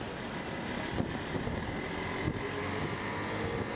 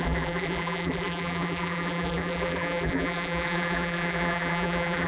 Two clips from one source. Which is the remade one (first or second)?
second